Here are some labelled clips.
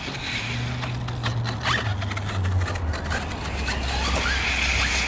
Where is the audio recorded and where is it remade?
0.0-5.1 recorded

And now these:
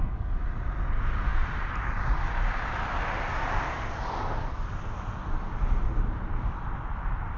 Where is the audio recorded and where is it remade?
0.0-7.4 recorded

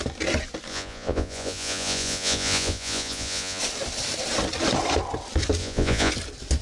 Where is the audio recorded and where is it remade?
0.0-0.7 recorded; 0.7-3.6 remade; 3.6-5.6 recorded; 5.6-6.1 remade; 6.1-6.6 recorded

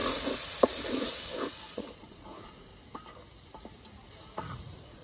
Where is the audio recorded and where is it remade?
0.0-2.7 remade; 2.7-4.1 recorded; 4.1-5.0 remade